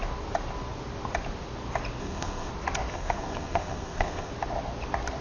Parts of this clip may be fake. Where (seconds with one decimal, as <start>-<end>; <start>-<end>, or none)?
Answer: 2.0-2.5; 2.9-4.3